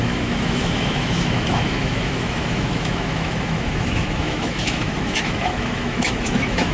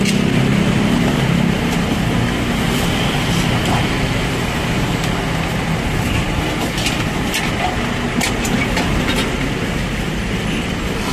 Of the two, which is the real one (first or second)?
second